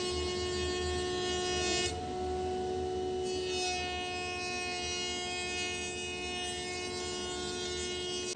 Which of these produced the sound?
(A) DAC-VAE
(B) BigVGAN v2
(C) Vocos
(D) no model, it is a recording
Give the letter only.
D